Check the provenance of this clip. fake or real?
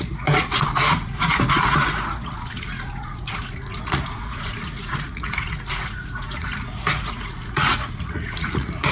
fake